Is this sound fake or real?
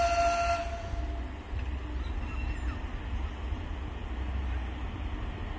real